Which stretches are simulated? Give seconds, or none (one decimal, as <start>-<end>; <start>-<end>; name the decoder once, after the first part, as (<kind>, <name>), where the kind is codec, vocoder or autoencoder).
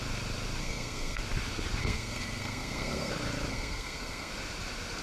0.6-1.2 (codec, SNAC); 1.8-3.1; 3.5-4.3